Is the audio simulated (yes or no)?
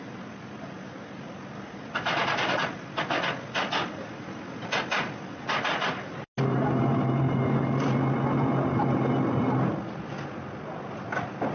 no